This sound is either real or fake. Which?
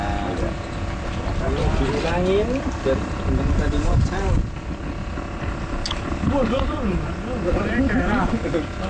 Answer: real